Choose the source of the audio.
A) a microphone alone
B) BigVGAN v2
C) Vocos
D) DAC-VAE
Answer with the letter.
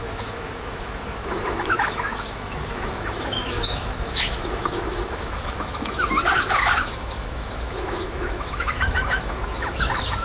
D